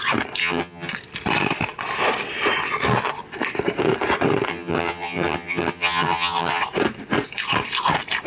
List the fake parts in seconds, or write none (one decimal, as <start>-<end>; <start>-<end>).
0.4-0.9; 4.5-6.6